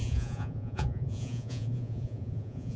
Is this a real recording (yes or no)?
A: no